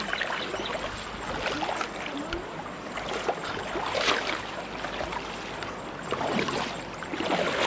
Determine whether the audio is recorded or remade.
recorded